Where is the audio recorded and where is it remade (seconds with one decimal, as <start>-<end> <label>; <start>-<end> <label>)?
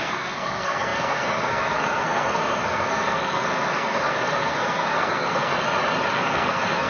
0.0-5.5 remade; 5.5-6.1 recorded; 6.1-6.9 remade